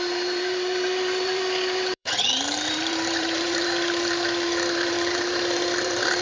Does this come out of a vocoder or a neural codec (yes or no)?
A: yes